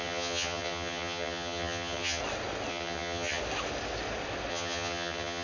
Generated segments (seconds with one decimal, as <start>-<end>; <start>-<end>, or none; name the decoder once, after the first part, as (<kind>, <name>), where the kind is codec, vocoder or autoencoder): 0.0-2.2 (vocoder, HiFi-GAN); 2.7-3.4; 4.5-5.4